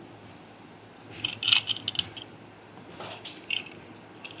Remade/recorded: recorded